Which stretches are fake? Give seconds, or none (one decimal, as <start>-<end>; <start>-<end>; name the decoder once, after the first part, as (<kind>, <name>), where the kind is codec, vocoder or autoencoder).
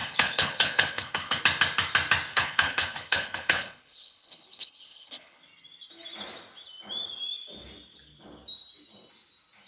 0.0-1.4 (codec, HILCodec); 2.3-5.4